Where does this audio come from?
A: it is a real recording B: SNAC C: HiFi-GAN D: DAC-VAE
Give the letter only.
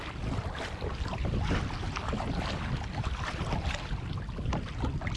A